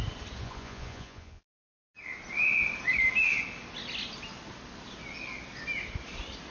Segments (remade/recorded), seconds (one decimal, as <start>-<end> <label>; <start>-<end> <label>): 0.0-0.4 recorded; 0.4-1.4 remade; 1.4-6.5 recorded